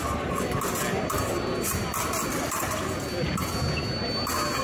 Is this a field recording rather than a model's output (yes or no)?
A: yes